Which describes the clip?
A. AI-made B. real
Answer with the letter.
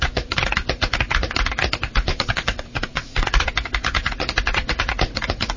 A